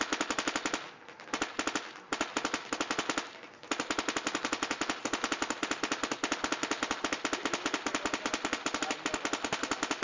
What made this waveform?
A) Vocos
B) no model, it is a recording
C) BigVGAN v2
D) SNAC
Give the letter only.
B